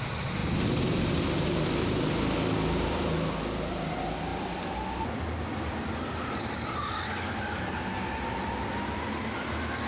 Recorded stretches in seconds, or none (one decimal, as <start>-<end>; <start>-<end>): 0.0-9.9